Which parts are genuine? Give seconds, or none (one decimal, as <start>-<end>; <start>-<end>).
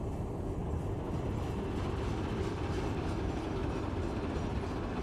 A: 0.0-5.0